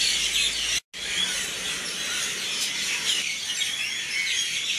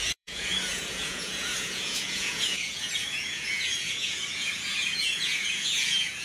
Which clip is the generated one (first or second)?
second